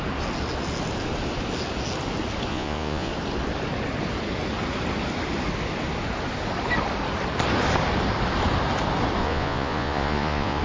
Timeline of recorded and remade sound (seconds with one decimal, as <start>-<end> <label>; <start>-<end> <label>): 0.0-2.5 recorded; 2.5-3.1 remade; 3.1-9.2 recorded; 9.2-10.6 remade